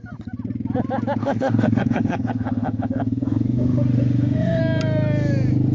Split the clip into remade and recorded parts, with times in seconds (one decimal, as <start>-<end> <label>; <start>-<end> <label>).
0.0-1.2 recorded; 1.2-4.6 remade; 4.6-5.7 recorded